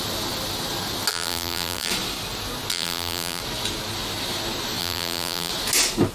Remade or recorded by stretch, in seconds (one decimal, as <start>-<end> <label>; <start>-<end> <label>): 0.0-1.1 recorded; 1.1-1.9 remade; 1.9-2.7 recorded; 2.7-3.4 remade; 3.4-4.8 recorded; 4.8-5.5 remade; 5.5-6.1 recorded